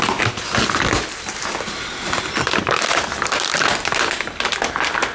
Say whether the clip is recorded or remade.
recorded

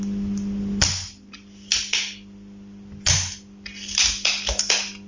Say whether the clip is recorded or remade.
recorded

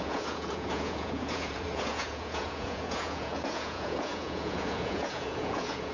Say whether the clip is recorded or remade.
remade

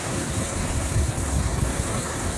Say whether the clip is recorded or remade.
remade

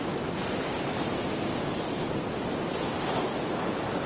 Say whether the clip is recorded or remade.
recorded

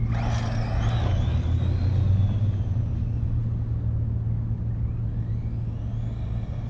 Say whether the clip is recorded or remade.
recorded